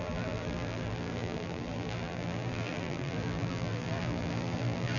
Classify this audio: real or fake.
fake